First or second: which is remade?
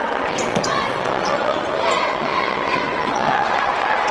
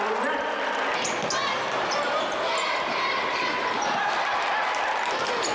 first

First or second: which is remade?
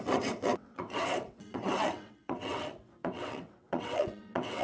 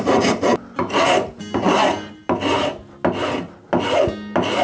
first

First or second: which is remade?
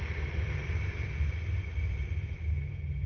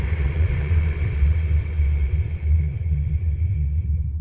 second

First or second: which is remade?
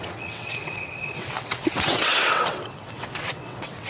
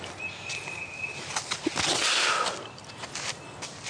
first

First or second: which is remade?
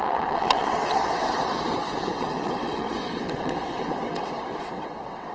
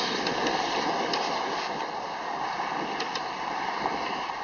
first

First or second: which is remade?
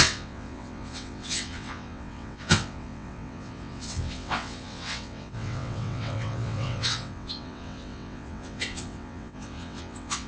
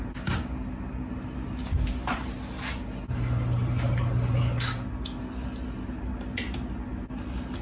first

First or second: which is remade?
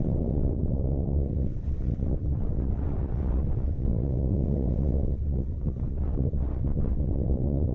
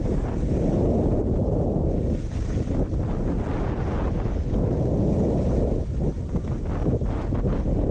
first